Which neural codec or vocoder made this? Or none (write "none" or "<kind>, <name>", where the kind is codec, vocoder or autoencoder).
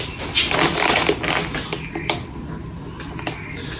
none